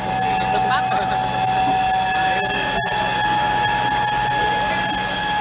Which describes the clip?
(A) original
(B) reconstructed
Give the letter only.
A